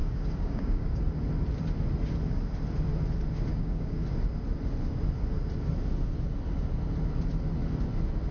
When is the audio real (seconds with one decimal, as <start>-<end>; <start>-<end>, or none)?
1.0-3.5; 4.0-8.3